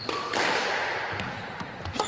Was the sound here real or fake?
real